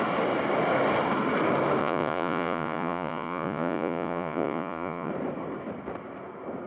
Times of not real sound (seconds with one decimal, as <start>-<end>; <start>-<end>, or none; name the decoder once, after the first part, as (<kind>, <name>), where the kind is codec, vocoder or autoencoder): 1.8-5.1 (vocoder, Vocos)